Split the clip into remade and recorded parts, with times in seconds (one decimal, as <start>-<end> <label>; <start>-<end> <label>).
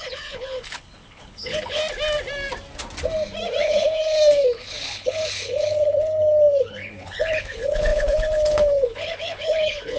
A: 0.0-1.8 remade; 1.8-3.6 recorded; 3.6-10.0 remade